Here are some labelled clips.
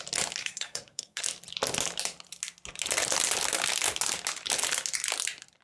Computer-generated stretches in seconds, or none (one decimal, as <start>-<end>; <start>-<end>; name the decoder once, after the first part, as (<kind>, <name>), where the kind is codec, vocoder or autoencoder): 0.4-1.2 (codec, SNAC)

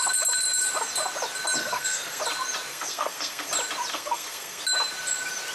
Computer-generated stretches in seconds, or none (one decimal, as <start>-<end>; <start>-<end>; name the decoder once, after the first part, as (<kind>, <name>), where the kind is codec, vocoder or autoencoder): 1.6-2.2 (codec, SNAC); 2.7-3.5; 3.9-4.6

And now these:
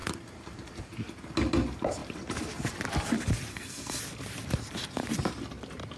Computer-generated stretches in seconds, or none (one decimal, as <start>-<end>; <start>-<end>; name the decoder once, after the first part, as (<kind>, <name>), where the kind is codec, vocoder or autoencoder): 3.5-4.0 (codec, SNAC)